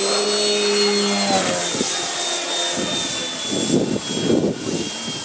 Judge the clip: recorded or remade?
recorded